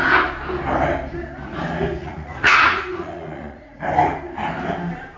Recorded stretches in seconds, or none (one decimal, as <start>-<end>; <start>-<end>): 0.0-2.0; 3.8-5.2